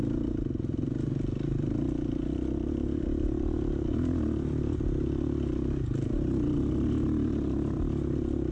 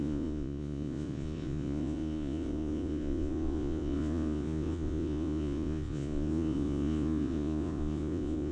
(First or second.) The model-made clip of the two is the second